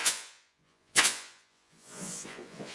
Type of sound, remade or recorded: remade